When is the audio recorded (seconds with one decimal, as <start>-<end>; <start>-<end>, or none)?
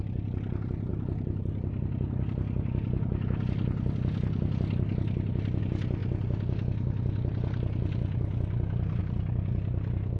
0.0-10.2